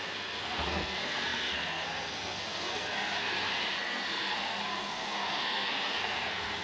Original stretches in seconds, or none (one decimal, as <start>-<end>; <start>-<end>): none